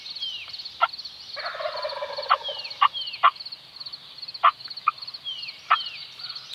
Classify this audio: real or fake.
real